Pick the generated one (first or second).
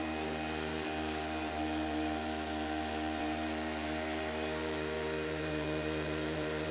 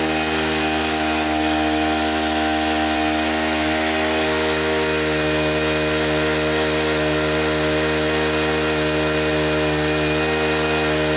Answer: first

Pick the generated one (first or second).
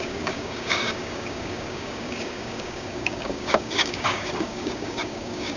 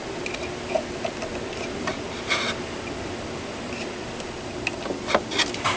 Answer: first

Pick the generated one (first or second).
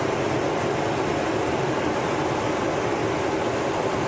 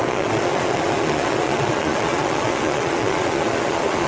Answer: second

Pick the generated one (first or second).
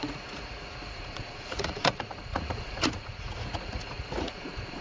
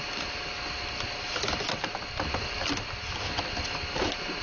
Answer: first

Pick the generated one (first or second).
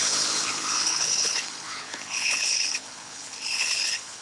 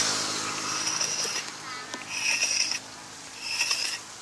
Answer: first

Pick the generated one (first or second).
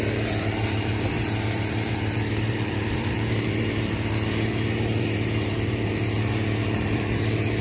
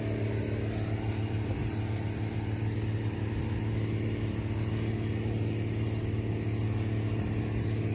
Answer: first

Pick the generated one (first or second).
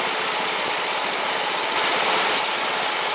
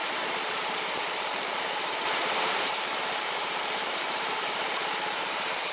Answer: second